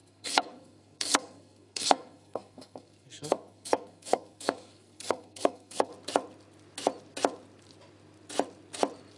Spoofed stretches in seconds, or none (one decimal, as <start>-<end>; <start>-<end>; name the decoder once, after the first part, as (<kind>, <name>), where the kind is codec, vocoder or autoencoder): 0.0-5.9 (codec, SNAC)